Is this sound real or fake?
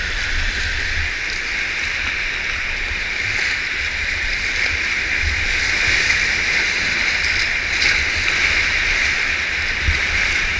real